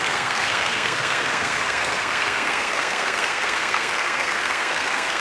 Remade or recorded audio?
remade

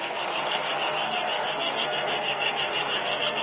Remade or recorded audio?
remade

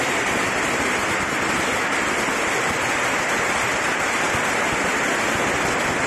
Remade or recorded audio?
recorded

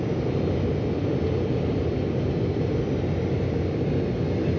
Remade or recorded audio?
recorded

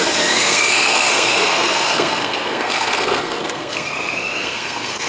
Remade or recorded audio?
remade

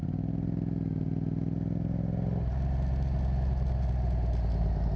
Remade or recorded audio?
recorded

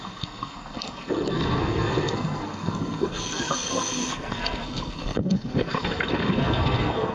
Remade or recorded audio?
remade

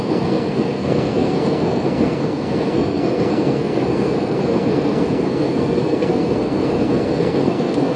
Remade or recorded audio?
remade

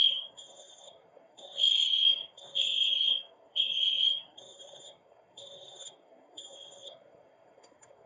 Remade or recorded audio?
remade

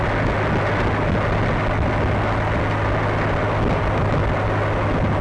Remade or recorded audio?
recorded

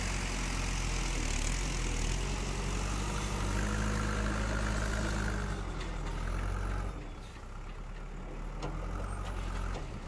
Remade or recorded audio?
recorded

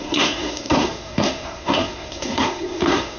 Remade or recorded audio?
remade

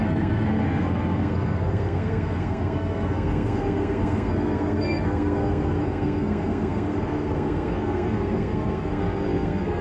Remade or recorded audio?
remade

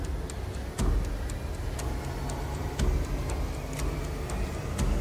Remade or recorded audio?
recorded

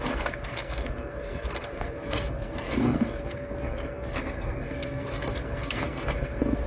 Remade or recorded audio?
remade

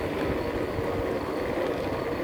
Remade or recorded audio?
recorded